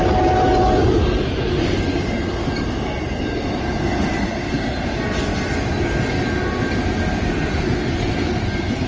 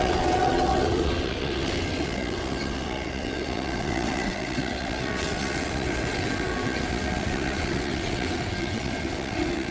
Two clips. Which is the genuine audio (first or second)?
first